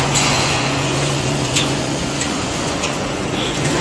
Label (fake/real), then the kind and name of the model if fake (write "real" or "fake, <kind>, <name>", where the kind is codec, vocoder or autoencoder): fake, vocoder, Vocos